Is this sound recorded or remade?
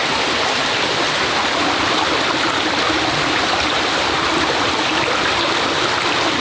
recorded